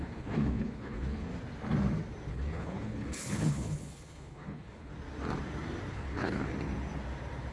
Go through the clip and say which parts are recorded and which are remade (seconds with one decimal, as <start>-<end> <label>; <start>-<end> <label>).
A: 0.0-1.3 remade; 1.3-2.3 recorded; 2.3-4.9 remade; 4.9-5.9 recorded; 5.9-6.5 remade; 6.5-7.5 recorded